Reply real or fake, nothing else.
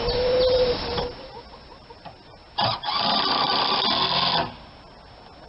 real